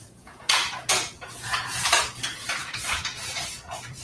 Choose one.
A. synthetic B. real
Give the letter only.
A